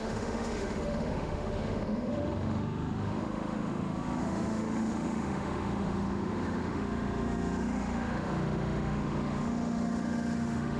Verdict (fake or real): fake